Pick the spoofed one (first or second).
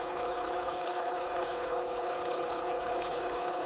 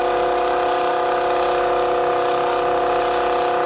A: first